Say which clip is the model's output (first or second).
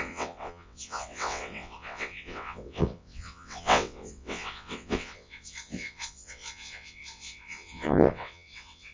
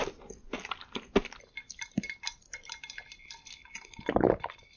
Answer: first